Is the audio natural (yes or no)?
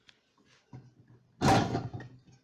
yes